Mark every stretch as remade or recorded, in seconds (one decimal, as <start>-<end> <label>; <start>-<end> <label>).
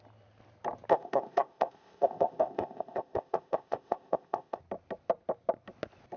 0.0-0.9 recorded; 0.9-4.6 remade; 4.6-6.2 recorded